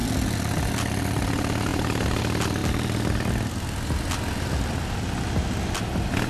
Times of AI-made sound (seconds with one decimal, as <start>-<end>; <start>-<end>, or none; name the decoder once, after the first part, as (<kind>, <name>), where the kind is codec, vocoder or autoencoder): 1.7-2.2 (vocoder, BigVGAN v2)